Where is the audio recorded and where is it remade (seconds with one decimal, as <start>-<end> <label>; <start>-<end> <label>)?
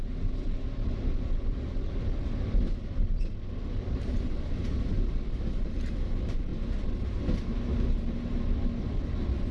0.0-9.5 recorded